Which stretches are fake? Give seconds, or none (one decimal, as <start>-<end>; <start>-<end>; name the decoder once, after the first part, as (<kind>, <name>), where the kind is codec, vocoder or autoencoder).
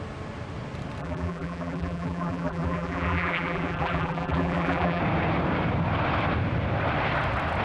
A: 1.0-5.0 (vocoder, BigVGAN v2)